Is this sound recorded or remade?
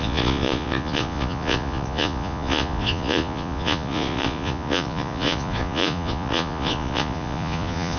remade